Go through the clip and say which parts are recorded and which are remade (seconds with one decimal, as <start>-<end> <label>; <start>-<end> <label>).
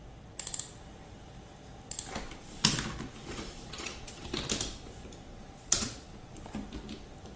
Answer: 0.0-3.2 recorded; 3.2-4.3 remade; 4.3-5.3 recorded; 5.3-6.4 remade; 6.4-7.4 recorded